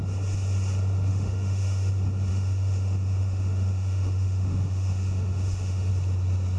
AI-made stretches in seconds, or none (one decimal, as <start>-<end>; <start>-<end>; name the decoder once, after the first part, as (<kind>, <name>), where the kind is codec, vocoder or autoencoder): 1.1-1.9 (autoencoder, DAC-VAE); 2.3-5.9